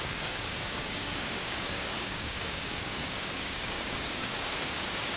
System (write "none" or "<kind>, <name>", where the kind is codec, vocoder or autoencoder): codec, DAC